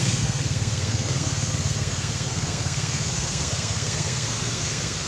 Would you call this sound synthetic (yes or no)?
yes